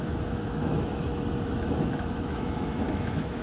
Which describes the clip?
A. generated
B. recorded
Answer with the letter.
A